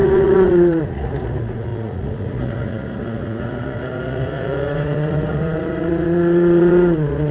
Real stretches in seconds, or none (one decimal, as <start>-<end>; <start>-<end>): none